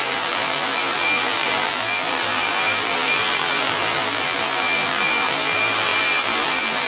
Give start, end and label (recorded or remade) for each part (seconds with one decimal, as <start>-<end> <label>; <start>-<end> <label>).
0.0-6.9 remade